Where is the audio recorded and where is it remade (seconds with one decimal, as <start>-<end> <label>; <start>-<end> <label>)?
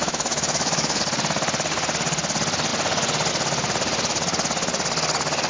0.0-1.0 remade; 1.0-5.5 recorded